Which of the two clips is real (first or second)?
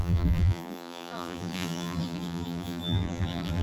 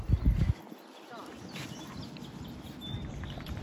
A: second